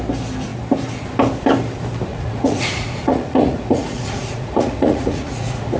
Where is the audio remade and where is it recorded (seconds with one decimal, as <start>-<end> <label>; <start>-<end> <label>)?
0.0-2.1 recorded; 2.1-5.8 remade